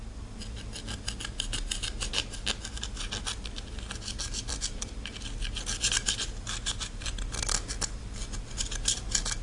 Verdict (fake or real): real